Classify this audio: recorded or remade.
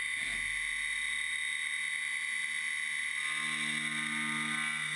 recorded